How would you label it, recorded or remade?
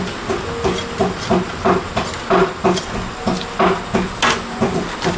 recorded